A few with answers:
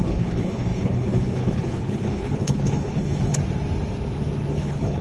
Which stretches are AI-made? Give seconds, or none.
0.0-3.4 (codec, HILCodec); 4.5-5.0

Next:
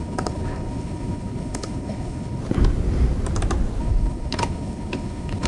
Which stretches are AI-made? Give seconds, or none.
0.0-2.4 (codec, HILCodec); 3.8-5.5

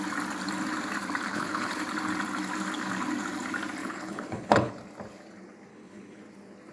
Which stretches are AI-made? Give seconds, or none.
1.3-1.8 (codec, HILCodec); 3.8-4.7; 5.7-6.2

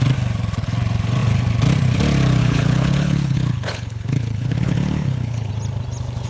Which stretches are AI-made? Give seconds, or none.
2.4-5.5 (codec, HILCodec)

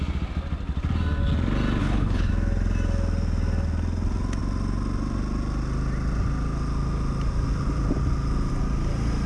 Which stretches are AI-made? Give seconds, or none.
1.8-2.3 (codec, HILCodec)

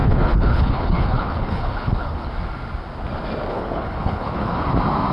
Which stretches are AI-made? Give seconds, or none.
0.0-2.3 (codec, HILCodec); 3.5-4.6

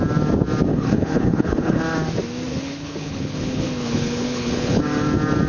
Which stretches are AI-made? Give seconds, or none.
0.7-1.8 (codec, HILCodec); 2.5-4.8

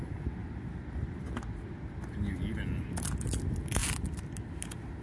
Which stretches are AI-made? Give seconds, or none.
none